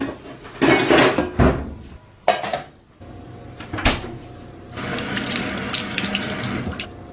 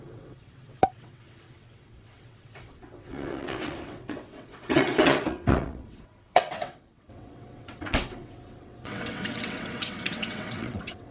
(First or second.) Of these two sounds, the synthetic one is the second